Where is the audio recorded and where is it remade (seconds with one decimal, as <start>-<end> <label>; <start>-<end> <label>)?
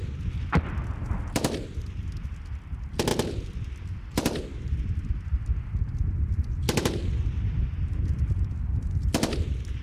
0.0-3.1 recorded; 3.1-8.3 remade; 8.3-9.8 recorded